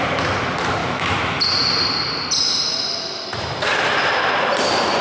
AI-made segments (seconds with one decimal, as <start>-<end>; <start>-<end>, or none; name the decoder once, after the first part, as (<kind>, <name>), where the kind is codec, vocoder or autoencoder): 0.8-1.4 (autoencoder, DAC-VAE)